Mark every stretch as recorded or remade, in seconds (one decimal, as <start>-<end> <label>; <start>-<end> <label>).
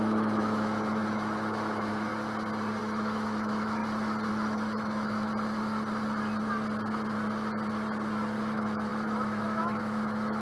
0.0-2.1 remade; 2.1-2.8 recorded; 2.8-3.8 remade; 3.8-4.3 recorded; 4.3-5.3 remade; 5.3-8.4 recorded; 8.4-10.4 remade